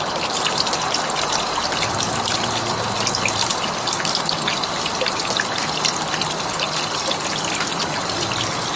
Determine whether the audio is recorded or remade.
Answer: recorded